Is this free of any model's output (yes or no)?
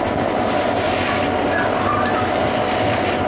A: yes